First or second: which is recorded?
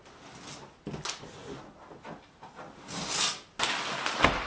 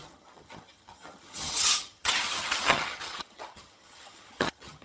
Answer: first